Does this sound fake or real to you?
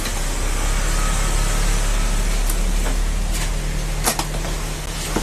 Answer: real